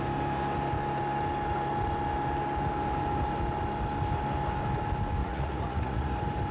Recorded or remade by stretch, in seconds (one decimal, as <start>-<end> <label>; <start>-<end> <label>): 0.0-5.2 recorded; 5.2-6.1 remade; 6.1-6.5 recorded